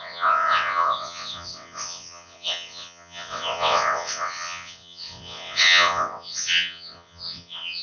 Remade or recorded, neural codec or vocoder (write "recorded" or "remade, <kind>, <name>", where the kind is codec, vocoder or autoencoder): remade, vocoder, WaveNeXt